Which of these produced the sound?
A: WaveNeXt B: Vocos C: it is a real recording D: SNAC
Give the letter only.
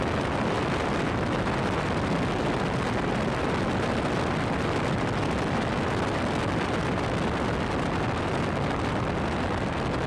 C